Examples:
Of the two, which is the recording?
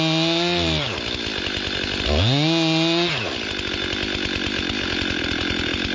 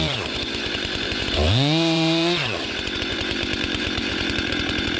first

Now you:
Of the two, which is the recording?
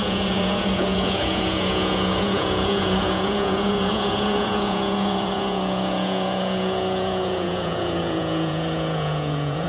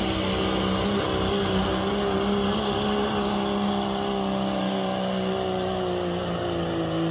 second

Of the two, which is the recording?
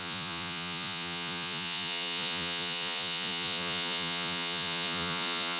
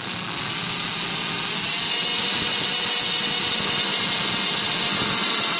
second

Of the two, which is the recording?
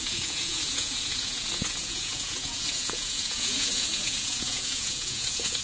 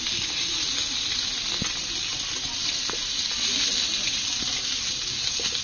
second